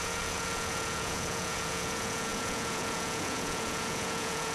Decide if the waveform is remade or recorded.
remade